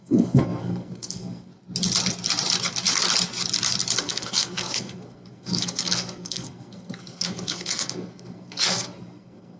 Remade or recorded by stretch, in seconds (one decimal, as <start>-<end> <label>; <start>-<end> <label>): 0.0-1.5 remade; 1.5-4.0 recorded; 4.0-9.6 remade